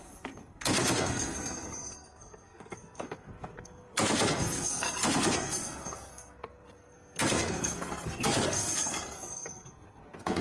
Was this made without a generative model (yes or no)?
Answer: no